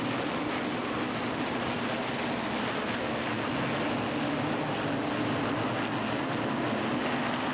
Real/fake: real